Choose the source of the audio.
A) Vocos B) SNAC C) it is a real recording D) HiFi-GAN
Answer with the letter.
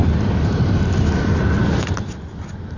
C